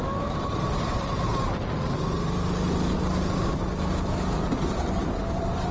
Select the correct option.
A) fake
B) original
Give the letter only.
B